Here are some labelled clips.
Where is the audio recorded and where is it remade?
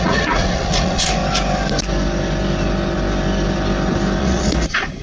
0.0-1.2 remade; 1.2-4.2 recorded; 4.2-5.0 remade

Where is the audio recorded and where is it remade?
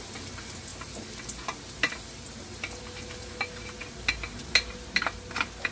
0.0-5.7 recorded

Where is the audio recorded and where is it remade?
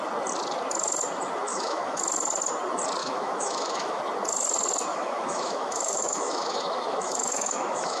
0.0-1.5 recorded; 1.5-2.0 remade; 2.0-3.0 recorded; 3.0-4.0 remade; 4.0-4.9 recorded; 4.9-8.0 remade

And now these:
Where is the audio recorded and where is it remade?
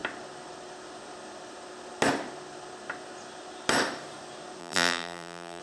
0.0-4.6 recorded; 4.6-5.6 remade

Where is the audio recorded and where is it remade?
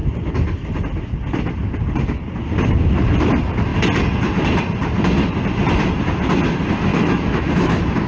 0.0-6.9 recorded; 6.9-8.1 remade